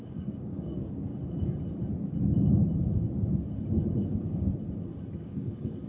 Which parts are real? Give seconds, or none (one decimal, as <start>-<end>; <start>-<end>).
1.1-4.1; 4.5-5.2